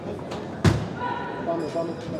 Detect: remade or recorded recorded